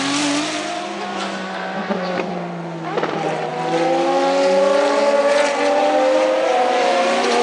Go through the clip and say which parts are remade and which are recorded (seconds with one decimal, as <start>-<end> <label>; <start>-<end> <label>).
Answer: 0.0-6.5 recorded; 6.5-7.4 remade